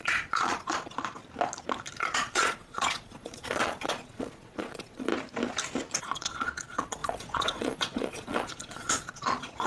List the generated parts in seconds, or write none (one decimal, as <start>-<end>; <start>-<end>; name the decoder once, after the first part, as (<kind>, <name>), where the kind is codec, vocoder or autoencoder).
0.0-1.2 (vocoder, Vocos); 2.0-5.1; 6.0-9.7